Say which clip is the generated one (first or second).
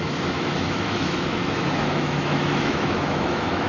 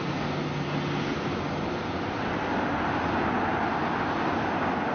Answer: first